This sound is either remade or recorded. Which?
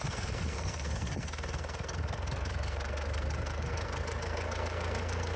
remade